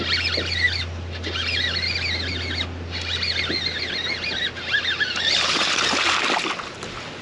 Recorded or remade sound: recorded